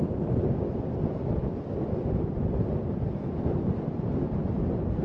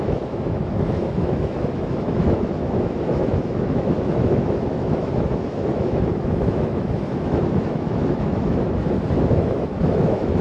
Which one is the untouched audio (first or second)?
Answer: first